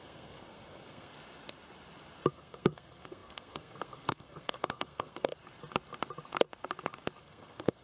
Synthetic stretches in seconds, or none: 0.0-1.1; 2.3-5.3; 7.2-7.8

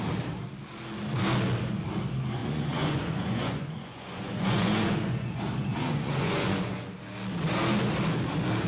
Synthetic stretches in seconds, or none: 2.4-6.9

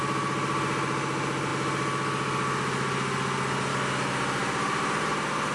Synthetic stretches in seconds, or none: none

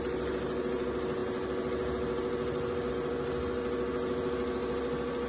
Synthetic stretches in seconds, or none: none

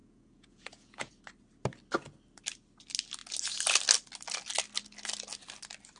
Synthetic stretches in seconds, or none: 0.0-1.1

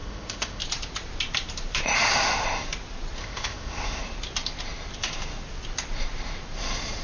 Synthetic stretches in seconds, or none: 0.0-0.6; 3.2-4.0

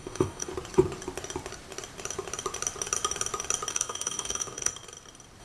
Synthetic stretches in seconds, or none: 0.0-0.5; 3.7-4.7